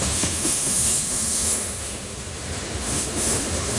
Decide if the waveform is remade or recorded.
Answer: remade